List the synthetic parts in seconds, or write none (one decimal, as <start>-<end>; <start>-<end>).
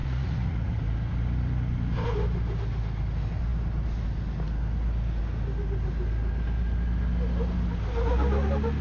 0.0-0.8